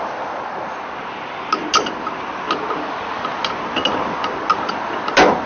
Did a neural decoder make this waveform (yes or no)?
no